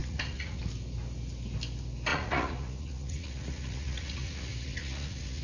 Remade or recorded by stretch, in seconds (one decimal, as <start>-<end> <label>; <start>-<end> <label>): 0.0-0.6 remade; 0.6-2.1 recorded; 2.1-5.4 remade